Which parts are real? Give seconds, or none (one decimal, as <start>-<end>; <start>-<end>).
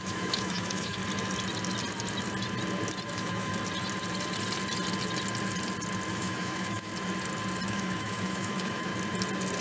1.0-3.1; 3.5-6.1; 6.9-7.7; 8.9-9.6